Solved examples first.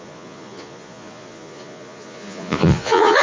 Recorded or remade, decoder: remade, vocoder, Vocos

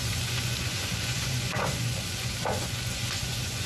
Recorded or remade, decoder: remade, vocoder, Vocos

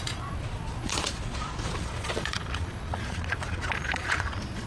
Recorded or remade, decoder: remade, vocoder, Vocos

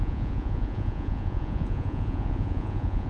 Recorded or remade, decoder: remade, vocoder, Vocos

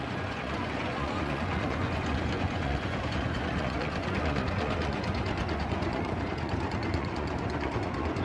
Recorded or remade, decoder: remade, vocoder, Vocos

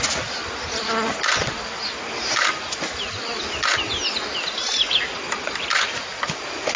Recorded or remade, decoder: recorded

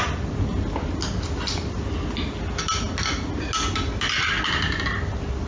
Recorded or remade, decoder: recorded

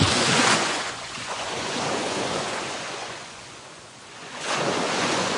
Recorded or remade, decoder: remade, vocoder, Vocos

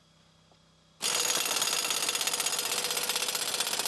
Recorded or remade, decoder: recorded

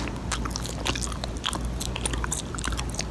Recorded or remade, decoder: recorded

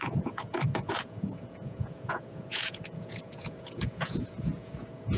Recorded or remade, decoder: remade, vocoder, Vocos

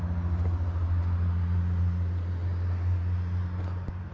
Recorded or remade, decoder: recorded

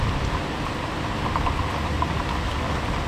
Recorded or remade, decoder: recorded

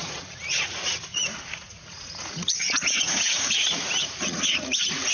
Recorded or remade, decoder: remade, vocoder, Vocos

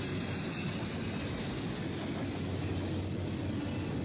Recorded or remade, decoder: recorded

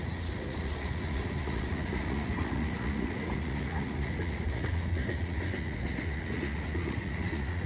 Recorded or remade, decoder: remade, vocoder, Vocos